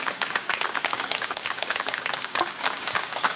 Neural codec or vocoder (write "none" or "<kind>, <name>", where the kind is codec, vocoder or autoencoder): codec, DAC